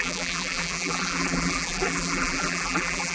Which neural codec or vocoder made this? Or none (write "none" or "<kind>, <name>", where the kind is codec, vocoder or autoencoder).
vocoder, BigVGAN v2